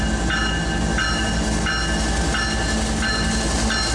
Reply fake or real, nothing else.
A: real